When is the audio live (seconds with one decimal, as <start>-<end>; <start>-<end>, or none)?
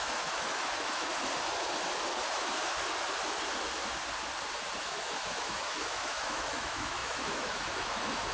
1.1-4.8